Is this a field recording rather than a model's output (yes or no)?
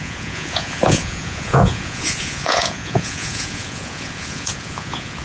no